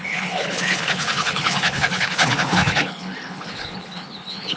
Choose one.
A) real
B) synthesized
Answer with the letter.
B